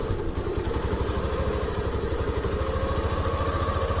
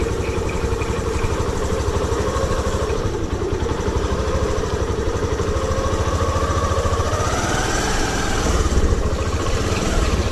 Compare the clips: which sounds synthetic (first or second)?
second